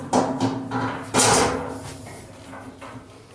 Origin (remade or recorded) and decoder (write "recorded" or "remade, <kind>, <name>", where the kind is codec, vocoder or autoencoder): recorded